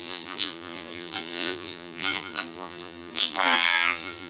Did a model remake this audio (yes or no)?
yes